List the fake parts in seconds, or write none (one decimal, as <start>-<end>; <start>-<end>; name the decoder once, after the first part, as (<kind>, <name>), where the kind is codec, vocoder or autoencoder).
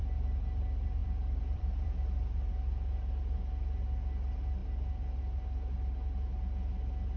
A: 1.0-2.5 (vocoder, BigVGAN v2)